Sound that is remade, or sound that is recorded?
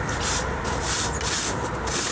recorded